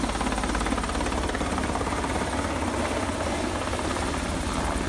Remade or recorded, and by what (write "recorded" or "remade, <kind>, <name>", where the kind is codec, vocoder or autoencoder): recorded